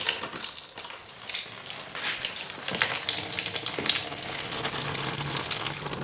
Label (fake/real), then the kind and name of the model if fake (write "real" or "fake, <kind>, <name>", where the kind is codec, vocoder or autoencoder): real